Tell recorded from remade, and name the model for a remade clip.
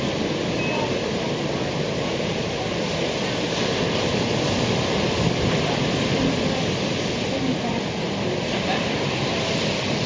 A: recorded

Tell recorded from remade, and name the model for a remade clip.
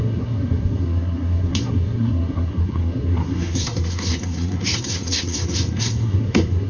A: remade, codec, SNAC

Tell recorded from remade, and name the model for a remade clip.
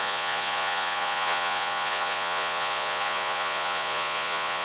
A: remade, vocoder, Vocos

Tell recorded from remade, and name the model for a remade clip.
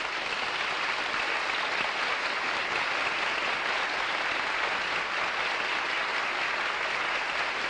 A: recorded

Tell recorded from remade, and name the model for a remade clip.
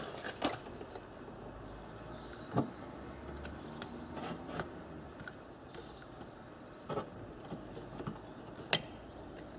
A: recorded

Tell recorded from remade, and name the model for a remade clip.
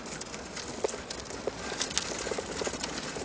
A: recorded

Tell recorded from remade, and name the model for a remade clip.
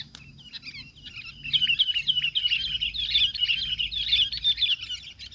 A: recorded